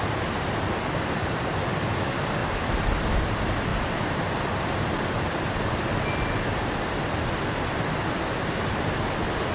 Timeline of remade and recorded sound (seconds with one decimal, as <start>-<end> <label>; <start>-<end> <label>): 0.0-9.5 recorded